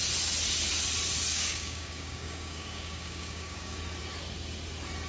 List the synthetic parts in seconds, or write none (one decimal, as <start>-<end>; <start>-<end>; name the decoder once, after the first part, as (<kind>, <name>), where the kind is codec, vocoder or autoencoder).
1.3-3.8 (codec, DAC)